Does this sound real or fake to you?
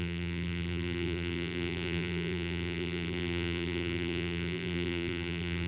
fake